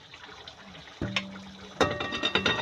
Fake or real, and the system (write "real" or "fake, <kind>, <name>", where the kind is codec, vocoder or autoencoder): real